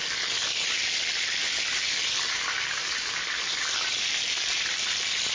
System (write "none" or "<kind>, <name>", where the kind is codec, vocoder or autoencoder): none